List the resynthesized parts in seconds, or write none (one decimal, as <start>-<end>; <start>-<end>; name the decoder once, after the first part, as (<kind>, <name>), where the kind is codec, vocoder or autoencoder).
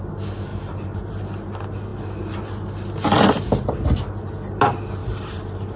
0.5-1.1 (vocoder, BigVGAN v2); 5.0-5.8